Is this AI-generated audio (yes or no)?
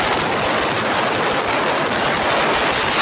no